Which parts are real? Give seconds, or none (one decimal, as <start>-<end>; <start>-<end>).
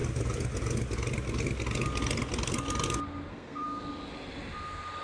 0.0-3.3; 3.8-5.0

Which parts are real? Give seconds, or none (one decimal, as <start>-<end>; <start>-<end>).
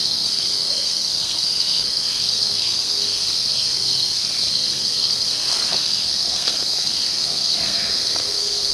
none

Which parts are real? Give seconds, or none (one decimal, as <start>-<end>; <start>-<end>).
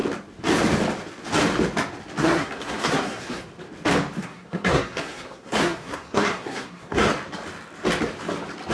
0.0-2.2; 3.4-4.2; 7.1-8.7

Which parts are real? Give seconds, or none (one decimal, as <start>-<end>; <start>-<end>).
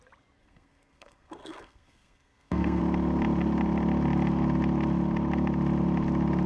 0.0-0.4; 2.8-6.5